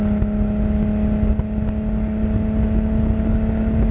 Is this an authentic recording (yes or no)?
yes